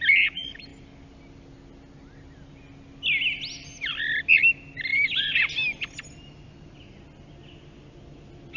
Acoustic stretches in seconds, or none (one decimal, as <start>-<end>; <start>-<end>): 0.0-8.6